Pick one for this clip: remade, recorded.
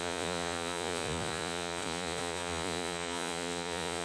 remade